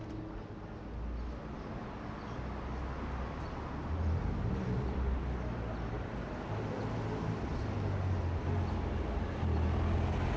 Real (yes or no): yes